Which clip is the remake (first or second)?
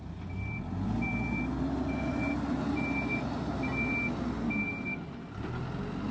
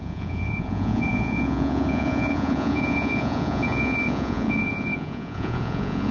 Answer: second